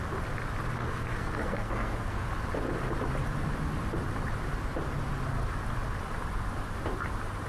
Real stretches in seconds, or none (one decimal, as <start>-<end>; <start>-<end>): 0.0-0.8; 2.3-7.5

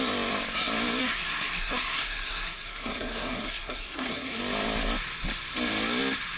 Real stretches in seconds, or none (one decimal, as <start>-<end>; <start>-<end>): 0.0-1.0; 4.4-6.4

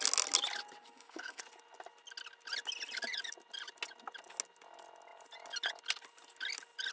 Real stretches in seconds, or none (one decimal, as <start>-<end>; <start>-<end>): 0.0-0.8; 1.4-6.9

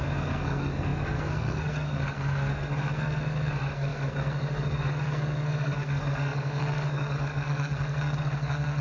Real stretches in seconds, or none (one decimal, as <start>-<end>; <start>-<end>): none

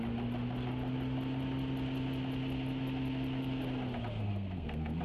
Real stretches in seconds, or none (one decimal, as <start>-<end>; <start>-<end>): 0.0-4.2

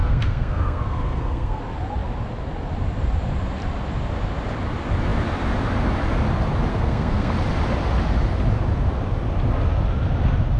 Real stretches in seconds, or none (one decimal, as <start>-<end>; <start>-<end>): 1.6-6.7; 7.3-10.6